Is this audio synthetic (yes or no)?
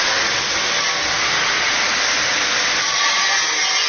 no